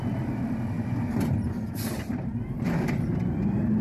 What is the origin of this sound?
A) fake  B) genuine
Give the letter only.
B